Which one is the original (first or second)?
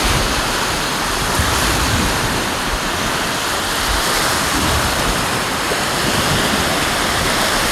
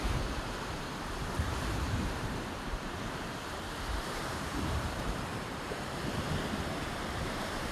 first